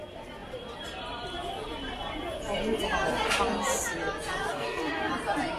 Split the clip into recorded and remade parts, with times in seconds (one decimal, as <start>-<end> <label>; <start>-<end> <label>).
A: 0.0-4.5 recorded; 4.5-5.1 remade; 5.1-5.6 recorded